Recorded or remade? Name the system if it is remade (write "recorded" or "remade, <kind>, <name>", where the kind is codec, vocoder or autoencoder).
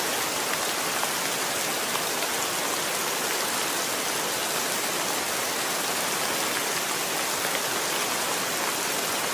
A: recorded